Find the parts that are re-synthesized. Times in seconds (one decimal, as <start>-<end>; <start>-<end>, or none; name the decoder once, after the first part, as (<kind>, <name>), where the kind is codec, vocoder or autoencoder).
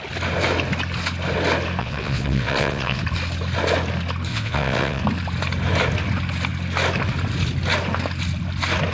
1.8-3.0 (vocoder, WaveNeXt); 4.3-5.0